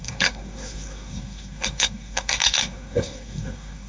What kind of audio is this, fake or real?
fake